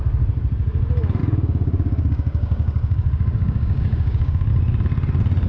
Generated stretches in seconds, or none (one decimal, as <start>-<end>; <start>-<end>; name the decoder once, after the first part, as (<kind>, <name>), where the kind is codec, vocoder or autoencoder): 1.2-4.5 (codec, DAC)